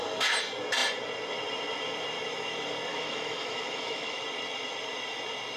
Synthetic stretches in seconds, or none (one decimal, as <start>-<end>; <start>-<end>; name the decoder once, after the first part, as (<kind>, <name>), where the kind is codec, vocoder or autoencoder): 2.9-4.2 (autoencoder, DAC-VAE)